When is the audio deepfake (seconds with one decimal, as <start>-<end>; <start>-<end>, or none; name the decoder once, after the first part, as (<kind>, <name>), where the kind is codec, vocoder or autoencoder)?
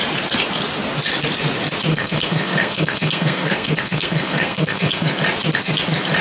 1.9-5.2 (codec, SNAC)